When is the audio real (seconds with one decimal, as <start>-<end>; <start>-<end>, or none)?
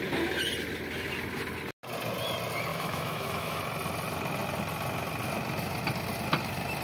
0.0-2.7; 3.6-6.8